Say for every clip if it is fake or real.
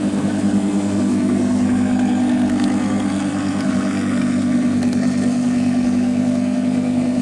fake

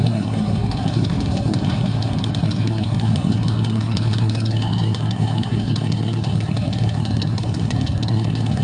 fake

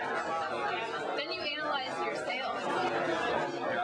real